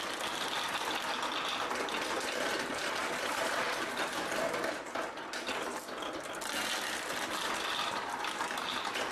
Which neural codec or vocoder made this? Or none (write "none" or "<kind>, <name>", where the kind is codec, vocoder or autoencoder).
none